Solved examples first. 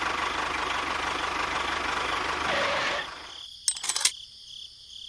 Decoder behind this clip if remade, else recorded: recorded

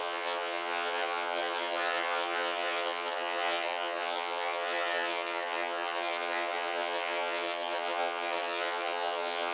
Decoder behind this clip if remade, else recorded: remade, vocoder, HiFi-GAN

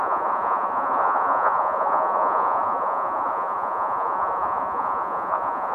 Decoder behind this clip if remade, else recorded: remade, vocoder, Vocos